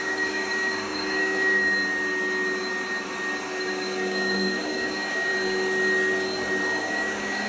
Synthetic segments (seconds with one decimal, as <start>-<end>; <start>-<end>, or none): 0.0-1.6; 3.6-5.3; 6.8-7.5

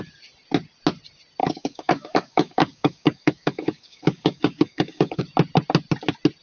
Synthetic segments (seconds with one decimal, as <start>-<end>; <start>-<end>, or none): 1.4-5.2

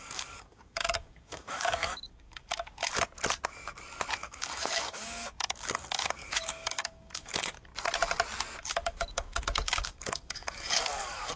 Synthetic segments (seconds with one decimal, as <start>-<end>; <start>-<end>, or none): 0.0-2.9; 4.2-7.7; 8.6-11.4

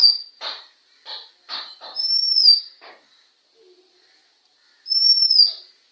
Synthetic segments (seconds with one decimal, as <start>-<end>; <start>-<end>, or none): 2.4-2.9

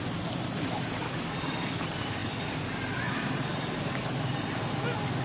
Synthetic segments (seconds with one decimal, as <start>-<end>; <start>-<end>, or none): none